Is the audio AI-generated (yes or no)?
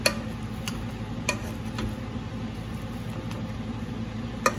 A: no